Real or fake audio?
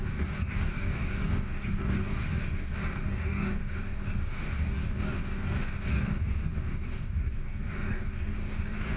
fake